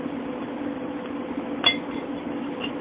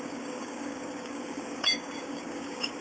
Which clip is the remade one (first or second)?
second